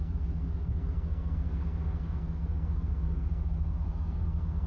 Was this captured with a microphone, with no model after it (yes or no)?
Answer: no